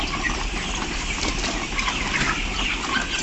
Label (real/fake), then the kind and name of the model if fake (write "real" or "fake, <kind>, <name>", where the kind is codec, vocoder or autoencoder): real